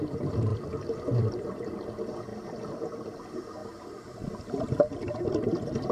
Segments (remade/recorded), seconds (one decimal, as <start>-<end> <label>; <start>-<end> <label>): 0.0-0.5 remade; 0.5-1.2 recorded; 1.2-5.9 remade